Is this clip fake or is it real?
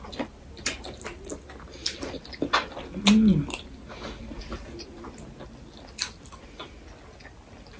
real